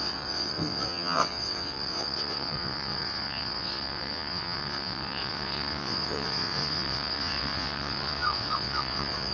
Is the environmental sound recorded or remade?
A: remade